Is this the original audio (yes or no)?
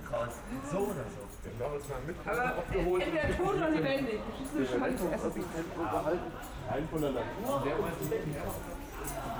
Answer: no